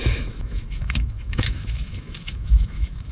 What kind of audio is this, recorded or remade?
remade